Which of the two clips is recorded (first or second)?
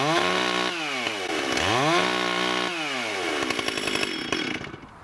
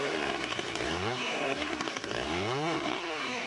first